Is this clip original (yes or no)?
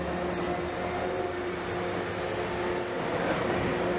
yes